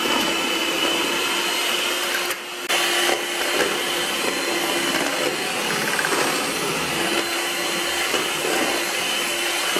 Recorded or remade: recorded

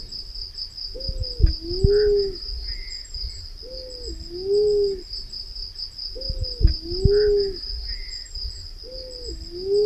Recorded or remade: recorded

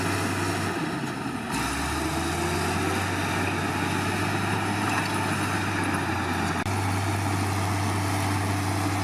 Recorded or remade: recorded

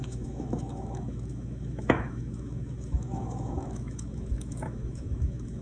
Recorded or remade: remade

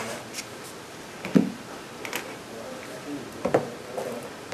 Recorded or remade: recorded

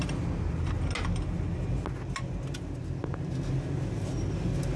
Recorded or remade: recorded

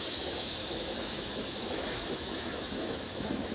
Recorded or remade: remade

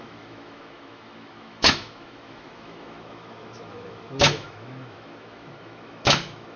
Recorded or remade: remade